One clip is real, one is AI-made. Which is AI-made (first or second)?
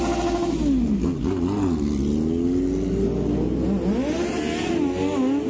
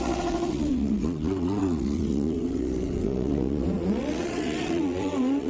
second